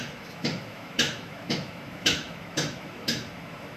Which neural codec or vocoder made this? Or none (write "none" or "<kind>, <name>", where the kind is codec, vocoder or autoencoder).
autoencoder, DAC-VAE